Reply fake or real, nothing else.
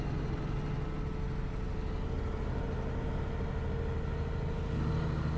real